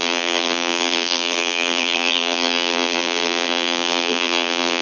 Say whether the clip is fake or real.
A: fake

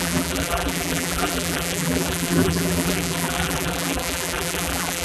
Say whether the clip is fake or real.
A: fake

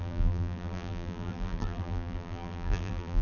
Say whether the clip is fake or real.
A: fake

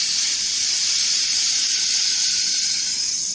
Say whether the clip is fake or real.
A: fake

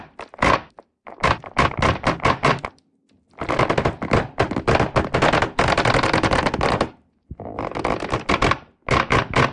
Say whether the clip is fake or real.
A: real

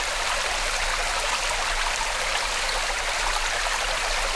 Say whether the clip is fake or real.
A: real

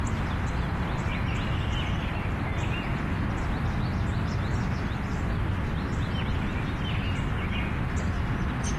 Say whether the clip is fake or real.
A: real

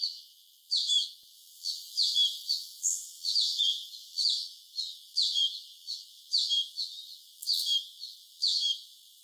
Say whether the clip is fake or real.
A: fake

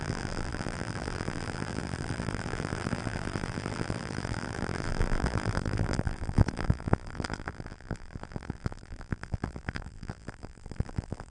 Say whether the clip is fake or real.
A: fake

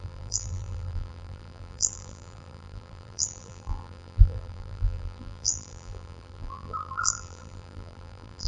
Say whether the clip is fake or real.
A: fake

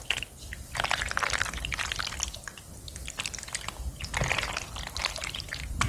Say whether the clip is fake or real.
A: real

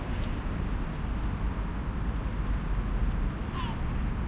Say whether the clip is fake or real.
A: real